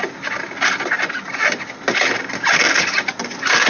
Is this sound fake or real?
real